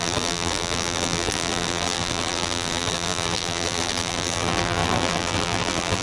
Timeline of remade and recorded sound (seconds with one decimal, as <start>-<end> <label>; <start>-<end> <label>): 0.0-6.0 remade